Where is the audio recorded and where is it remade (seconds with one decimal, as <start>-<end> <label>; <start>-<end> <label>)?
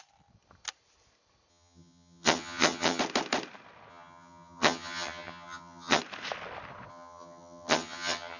0.0-1.5 recorded; 1.5-3.0 remade; 3.0-3.9 recorded; 3.9-6.0 remade; 6.0-6.9 recorded; 6.9-8.4 remade